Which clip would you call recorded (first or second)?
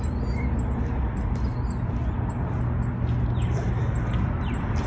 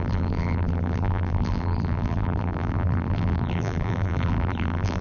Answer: first